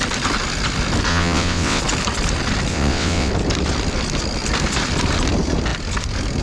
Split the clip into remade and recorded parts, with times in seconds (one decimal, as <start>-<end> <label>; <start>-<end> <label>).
0.0-1.1 recorded; 1.1-1.8 remade; 1.8-2.7 recorded; 2.7-3.3 remade; 3.3-6.4 recorded